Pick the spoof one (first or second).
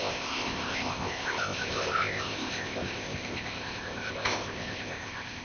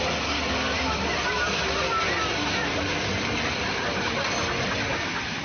first